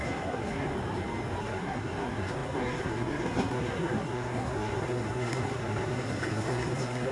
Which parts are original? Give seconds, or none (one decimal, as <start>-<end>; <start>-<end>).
0.7-1.4